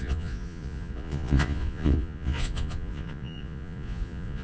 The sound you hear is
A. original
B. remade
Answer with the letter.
B